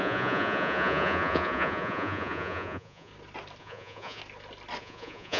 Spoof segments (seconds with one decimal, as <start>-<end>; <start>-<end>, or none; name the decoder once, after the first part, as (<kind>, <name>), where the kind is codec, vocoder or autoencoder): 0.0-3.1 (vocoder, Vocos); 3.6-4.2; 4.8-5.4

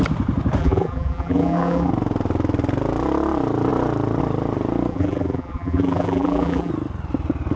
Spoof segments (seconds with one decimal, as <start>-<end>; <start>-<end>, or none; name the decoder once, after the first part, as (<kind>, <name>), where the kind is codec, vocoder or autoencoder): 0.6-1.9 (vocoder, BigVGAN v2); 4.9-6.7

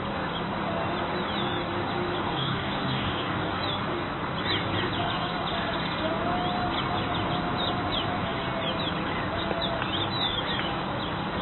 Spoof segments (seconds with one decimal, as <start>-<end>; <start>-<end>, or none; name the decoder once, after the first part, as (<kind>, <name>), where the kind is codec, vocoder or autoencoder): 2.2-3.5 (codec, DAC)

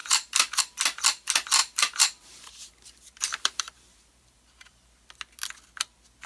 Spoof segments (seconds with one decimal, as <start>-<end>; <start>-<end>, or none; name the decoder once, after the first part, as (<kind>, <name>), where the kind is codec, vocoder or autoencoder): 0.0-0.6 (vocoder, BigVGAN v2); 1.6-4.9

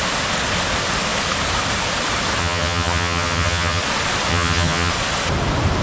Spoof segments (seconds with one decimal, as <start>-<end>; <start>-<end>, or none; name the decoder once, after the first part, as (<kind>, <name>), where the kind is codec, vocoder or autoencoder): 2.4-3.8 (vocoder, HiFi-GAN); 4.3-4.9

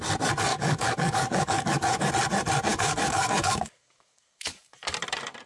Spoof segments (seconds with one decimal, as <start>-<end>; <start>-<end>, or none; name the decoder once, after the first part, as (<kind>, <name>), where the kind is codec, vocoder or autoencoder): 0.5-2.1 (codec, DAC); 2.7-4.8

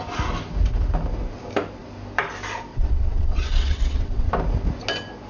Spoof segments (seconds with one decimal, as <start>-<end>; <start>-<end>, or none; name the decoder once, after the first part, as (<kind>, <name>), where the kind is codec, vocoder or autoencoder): 2.7-4.3 (vocoder, WaveNeXt)

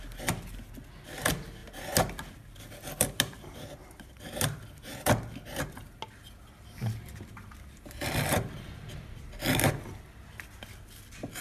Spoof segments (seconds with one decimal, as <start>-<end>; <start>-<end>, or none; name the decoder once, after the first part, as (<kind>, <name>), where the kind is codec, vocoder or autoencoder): none